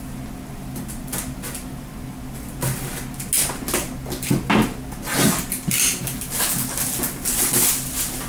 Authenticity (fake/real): real